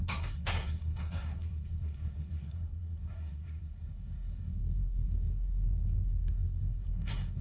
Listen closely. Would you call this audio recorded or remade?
remade